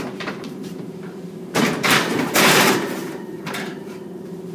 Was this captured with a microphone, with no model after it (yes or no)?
no